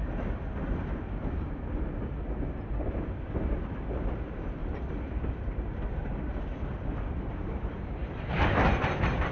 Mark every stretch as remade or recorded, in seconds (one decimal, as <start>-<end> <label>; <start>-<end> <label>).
0.0-4.6 recorded; 4.6-9.3 remade